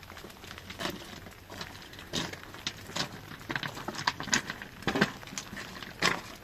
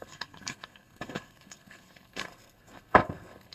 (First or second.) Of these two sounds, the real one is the first